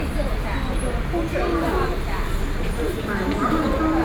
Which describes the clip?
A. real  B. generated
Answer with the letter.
A